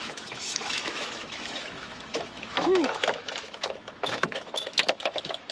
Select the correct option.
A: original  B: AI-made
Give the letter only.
B